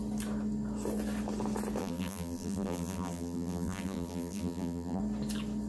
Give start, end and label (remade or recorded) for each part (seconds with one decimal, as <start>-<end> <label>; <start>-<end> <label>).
0.0-1.8 recorded; 1.8-5.0 remade; 5.0-5.7 recorded